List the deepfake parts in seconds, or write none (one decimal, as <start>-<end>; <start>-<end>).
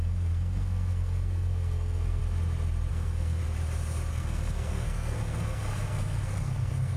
0.0-2.2; 2.9-3.4; 4.1-7.0